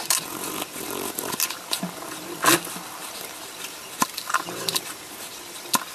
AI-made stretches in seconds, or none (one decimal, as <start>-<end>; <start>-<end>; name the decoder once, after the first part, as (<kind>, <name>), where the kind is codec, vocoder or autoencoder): 4.2-4.8 (vocoder, BigVGAN v2)